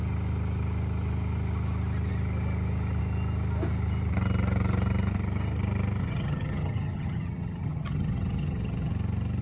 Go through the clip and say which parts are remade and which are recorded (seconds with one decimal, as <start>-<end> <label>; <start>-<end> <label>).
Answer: 0.0-6.0 recorded; 6.0-8.9 remade; 8.9-9.4 recorded